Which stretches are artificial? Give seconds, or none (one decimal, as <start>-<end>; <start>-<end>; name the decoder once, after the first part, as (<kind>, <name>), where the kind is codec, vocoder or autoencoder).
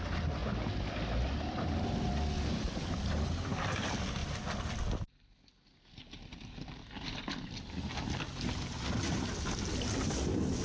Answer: none